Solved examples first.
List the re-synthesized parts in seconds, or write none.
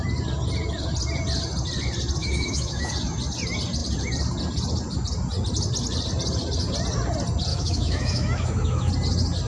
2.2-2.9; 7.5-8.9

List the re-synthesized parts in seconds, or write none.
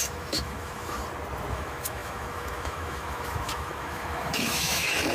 0.0-1.0; 1.5-5.1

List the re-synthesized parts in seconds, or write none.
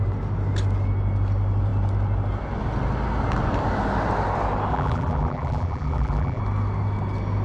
4.7-6.4